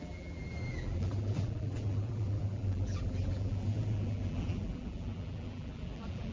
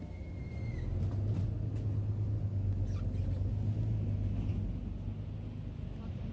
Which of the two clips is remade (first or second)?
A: first